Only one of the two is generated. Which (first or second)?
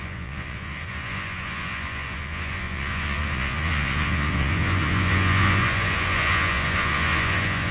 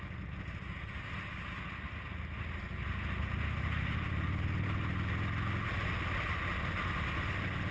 first